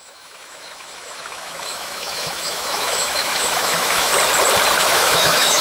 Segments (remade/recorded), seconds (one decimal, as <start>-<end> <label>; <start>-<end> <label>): 0.0-4.1 remade; 4.1-4.8 recorded; 4.8-5.6 remade

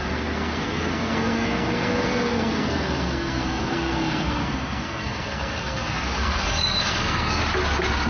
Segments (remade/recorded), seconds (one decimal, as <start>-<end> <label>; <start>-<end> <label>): 0.0-7.4 remade; 7.4-8.1 recorded